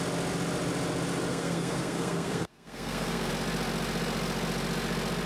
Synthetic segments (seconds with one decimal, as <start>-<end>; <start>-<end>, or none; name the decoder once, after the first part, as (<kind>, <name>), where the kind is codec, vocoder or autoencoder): 1.3-3.3 (codec, SNAC)